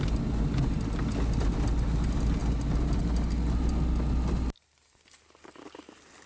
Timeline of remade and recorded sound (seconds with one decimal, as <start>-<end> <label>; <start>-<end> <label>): 0.0-6.3 recorded